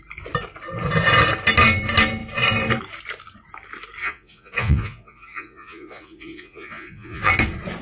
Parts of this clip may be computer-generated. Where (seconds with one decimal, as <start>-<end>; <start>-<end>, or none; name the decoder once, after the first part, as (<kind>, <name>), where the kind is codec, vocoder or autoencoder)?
4.0-7.3 (vocoder, Vocos)